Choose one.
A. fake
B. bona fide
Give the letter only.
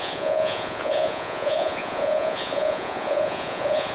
A